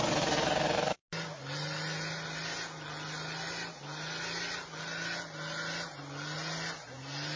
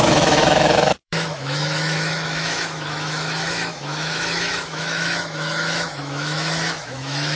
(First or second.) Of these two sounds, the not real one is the second